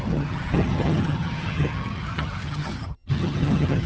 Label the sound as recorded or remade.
remade